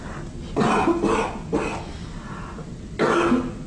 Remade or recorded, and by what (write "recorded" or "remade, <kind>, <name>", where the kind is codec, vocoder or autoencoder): recorded